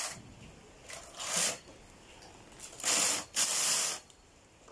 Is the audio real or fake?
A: real